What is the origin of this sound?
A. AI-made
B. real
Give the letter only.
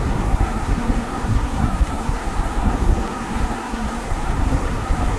A